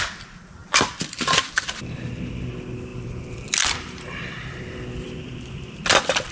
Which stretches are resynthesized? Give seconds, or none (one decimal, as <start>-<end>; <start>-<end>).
0.6-2.4; 2.9-6.3